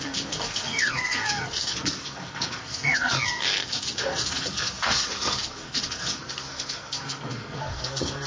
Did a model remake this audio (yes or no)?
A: yes